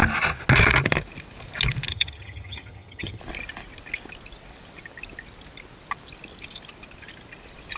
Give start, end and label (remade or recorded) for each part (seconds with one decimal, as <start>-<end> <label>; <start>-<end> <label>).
0.0-1.9 recorded; 1.9-3.2 remade; 3.2-7.8 recorded